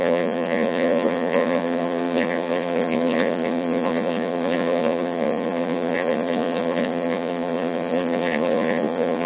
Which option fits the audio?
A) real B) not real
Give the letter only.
B